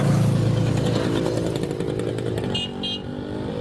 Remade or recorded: recorded